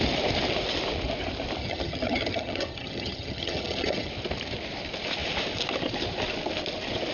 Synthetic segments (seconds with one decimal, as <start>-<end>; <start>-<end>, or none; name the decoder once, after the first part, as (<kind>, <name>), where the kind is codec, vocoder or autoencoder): 1.6-4.1 (vocoder, HiFi-GAN)